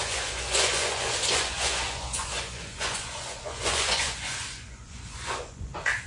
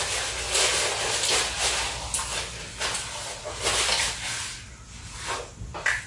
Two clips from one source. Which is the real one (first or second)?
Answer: second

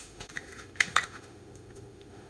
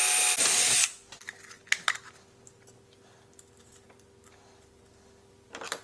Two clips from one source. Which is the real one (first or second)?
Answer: second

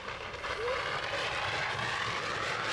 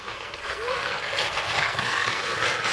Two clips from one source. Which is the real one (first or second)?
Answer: first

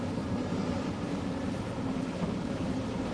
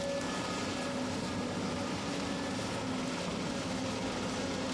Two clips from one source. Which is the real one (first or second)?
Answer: second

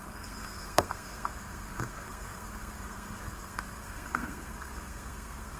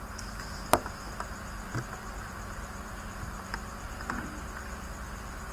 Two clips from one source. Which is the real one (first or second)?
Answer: second